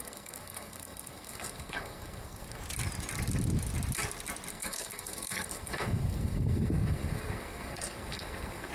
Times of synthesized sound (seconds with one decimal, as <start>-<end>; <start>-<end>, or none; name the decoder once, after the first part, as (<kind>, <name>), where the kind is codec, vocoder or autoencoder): 0.0-2.6 (codec, SNAC); 4.5-8.7